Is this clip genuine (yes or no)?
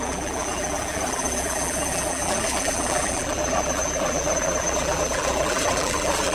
no